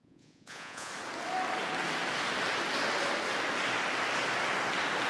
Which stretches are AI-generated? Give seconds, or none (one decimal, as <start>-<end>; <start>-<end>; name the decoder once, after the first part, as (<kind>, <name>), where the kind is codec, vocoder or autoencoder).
0.0-0.9 (vocoder, Vocos)